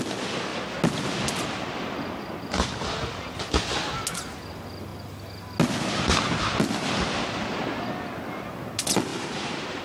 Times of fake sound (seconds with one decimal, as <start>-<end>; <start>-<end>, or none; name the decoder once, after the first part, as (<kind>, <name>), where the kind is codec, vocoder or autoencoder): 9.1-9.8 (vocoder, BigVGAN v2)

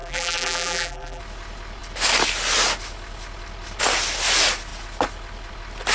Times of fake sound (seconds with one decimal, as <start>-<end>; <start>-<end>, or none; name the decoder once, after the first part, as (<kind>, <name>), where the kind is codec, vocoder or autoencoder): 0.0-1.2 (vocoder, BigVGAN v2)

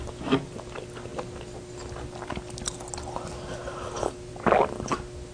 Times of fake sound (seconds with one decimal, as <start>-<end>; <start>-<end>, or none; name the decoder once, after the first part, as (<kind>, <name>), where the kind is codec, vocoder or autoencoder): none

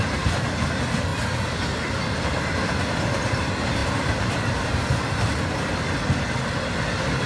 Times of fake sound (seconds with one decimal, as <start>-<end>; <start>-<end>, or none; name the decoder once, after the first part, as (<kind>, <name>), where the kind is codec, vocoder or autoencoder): 3.8-5.1 (vocoder, BigVGAN v2)

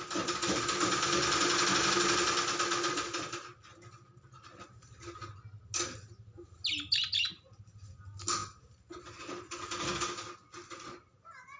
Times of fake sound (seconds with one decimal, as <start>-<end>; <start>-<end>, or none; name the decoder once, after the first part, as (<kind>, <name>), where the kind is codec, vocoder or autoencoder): none